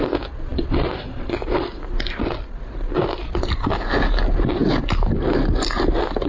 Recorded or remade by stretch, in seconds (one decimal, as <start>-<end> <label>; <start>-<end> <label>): 0.0-6.3 recorded